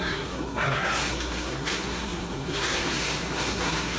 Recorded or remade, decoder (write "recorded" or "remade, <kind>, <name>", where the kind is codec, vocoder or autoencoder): remade, codec, SNAC